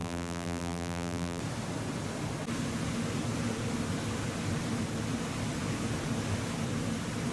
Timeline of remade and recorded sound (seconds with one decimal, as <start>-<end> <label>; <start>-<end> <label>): 0.0-1.4 remade; 1.4-7.3 recorded